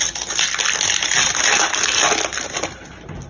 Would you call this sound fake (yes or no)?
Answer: no